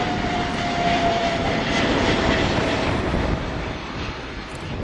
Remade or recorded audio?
remade